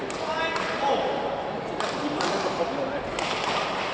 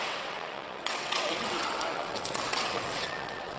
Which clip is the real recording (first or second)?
first